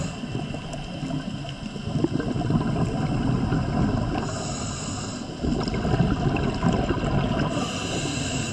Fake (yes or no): no